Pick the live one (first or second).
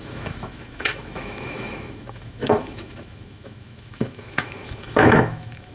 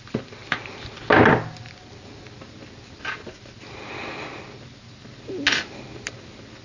second